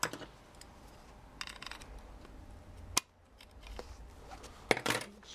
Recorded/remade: recorded